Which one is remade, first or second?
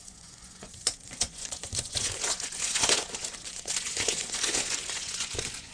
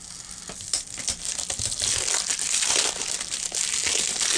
first